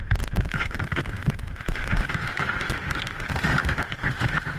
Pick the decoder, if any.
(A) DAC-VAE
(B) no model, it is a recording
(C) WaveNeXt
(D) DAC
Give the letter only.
A